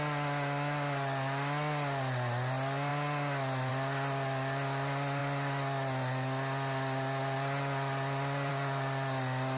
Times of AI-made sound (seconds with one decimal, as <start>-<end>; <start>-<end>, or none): none